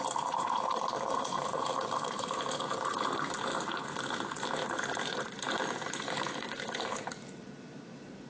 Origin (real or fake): fake